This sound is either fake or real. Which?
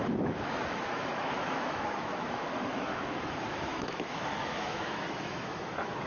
fake